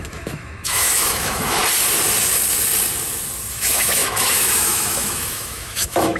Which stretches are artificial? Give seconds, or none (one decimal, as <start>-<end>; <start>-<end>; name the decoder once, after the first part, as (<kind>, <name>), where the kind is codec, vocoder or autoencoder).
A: 0.0-1.6 (autoencoder, DAC-VAE); 3.5-6.2

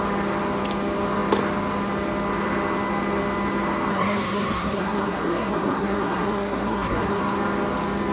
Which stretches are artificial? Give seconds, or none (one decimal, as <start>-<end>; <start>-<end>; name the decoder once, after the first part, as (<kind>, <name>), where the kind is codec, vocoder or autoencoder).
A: 3.9-7.2 (codec, SNAC)

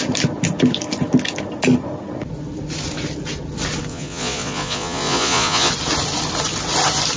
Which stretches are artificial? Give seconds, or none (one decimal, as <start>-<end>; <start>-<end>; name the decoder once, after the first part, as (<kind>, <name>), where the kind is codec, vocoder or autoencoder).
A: 3.9-5.7 (vocoder, Vocos)

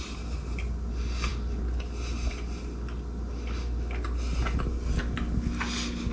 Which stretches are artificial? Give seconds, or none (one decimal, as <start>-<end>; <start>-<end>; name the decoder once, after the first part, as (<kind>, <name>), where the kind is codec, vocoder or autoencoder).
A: none